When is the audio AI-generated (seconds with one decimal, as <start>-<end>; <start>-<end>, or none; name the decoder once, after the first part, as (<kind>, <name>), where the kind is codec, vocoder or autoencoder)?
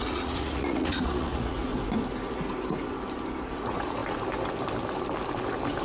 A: 0.0-1.7 (vocoder, Vocos); 3.6-4.0